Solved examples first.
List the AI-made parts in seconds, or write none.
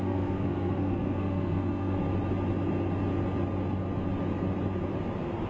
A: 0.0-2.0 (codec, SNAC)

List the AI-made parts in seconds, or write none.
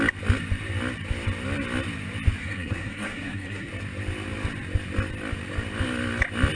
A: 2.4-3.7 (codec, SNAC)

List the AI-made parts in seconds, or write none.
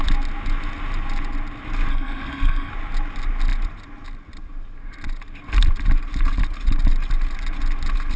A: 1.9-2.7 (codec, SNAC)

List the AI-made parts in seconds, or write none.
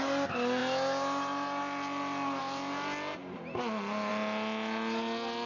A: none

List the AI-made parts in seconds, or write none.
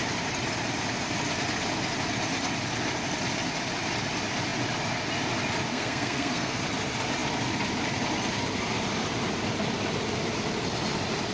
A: 5.7-6.6 (codec, SNAC)